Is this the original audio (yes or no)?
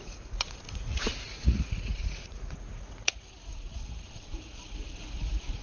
no